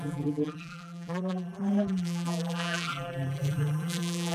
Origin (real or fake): fake